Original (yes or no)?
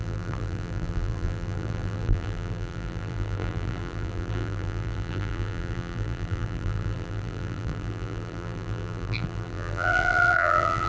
no